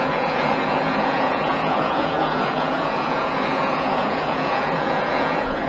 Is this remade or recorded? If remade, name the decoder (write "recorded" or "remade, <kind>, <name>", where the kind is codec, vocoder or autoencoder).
remade, vocoder, Vocos